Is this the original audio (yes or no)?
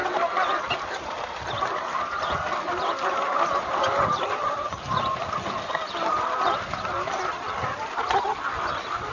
yes